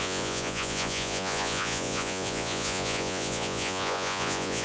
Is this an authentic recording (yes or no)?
no